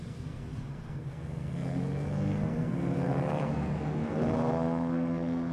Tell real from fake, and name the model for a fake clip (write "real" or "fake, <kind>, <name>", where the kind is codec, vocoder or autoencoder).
fake, codec, SNAC